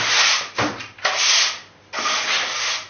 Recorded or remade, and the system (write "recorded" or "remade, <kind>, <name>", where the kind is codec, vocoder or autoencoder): recorded